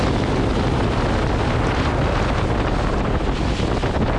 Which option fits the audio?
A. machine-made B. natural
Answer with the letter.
B